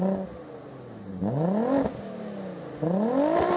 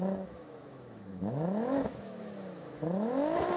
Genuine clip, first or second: first